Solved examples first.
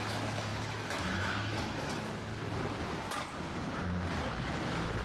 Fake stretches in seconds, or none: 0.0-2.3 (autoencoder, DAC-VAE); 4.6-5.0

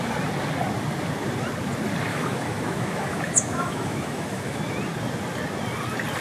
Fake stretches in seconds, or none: 2.1-4.6 (autoencoder, DAC-VAE)

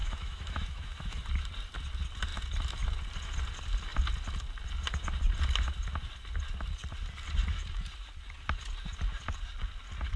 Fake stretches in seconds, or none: 0.0-1.2 (autoencoder, DAC-VAE)

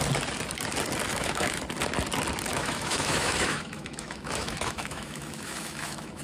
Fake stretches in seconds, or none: 1.1-1.6 (autoencoder, DAC-VAE); 2.5-6.2

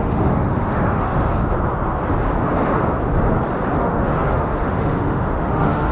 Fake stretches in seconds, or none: 0.0-1.3 (autoencoder, DAC-VAE); 3.8-5.9

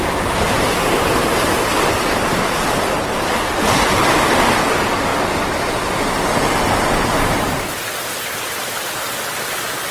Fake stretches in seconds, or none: none

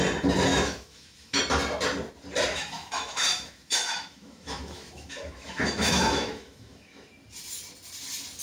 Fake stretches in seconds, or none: 0.5-1.4 (autoencoder, DAC-VAE); 2.5-7.1

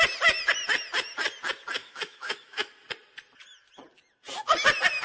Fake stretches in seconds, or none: 1.8-2.7 (autoencoder, DAC-VAE)